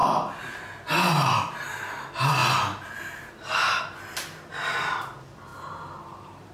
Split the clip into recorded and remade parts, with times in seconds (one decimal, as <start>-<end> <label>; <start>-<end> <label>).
0.0-5.5 recorded; 5.5-6.5 remade

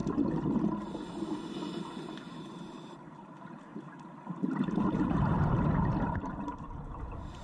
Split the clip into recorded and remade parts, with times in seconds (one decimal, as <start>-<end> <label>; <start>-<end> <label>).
0.0-2.2 recorded; 2.2-7.4 remade

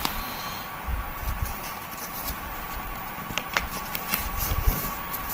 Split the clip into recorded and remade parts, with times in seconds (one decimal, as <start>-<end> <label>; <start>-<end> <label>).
0.0-5.3 recorded

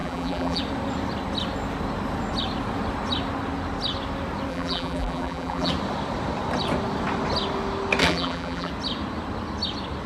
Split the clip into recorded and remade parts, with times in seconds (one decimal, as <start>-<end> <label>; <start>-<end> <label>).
0.0-0.6 remade; 0.6-4.5 recorded; 4.5-5.7 remade; 5.7-8.0 recorded; 8.0-8.7 remade; 8.7-10.1 recorded

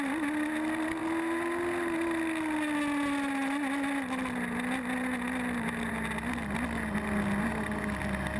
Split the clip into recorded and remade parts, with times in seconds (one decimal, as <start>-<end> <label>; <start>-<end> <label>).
0.0-8.4 recorded

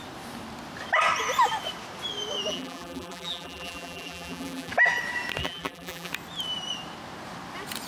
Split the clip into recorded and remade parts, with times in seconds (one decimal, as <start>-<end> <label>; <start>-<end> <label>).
0.0-2.5 recorded; 2.5-4.7 remade; 4.7-5.4 recorded; 5.4-6.1 remade; 6.1-7.9 recorded

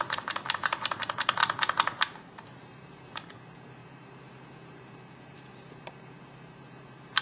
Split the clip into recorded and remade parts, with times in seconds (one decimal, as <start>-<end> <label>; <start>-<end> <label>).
0.0-1.4 remade; 1.4-2.2 recorded; 2.2-7.2 remade